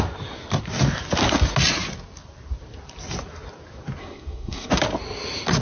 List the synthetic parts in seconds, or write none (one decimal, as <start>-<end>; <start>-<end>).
4.0-4.7